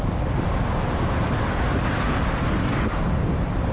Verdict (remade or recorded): recorded